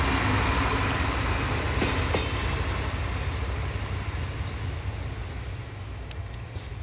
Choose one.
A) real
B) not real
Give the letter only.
A